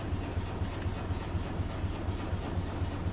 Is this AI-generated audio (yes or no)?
no